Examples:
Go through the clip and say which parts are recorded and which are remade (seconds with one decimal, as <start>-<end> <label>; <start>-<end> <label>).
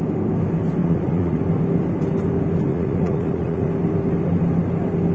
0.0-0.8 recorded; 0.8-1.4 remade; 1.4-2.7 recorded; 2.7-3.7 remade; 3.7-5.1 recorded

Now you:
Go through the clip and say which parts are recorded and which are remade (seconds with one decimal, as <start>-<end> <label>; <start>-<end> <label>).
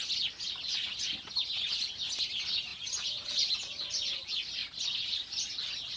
0.0-6.0 recorded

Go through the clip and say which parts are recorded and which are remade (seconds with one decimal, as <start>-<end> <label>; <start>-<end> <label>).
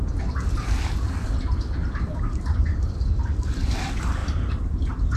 0.0-1.8 recorded; 1.8-3.1 remade; 3.1-4.2 recorded; 4.2-5.2 remade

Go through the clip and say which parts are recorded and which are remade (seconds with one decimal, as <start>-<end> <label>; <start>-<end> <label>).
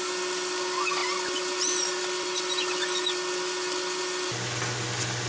0.0-5.3 recorded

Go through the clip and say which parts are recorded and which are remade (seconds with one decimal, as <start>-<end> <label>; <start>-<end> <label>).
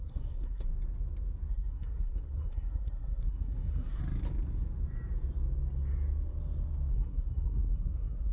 0.0-0.7 remade; 0.7-1.5 recorded; 1.5-4.0 remade; 4.0-6.9 recorded; 6.9-8.3 remade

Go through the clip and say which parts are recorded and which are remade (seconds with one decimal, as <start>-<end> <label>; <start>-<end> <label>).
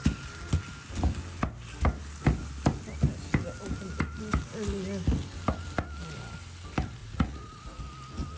0.0-7.0 recorded; 7.0-7.8 remade; 7.8-8.4 recorded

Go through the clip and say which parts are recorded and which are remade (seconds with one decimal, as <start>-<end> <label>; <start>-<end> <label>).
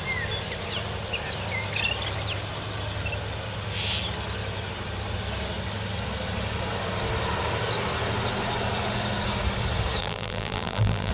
0.0-10.0 recorded; 10.0-11.1 remade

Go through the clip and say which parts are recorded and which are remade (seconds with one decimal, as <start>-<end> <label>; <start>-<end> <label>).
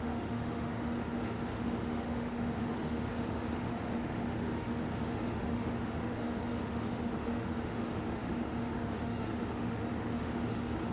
0.0-10.9 remade